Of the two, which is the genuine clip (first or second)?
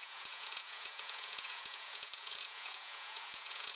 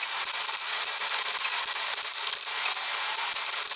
second